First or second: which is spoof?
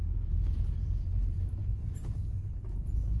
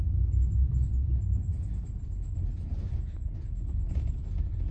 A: first